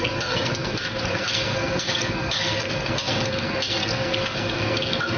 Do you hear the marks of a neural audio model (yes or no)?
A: yes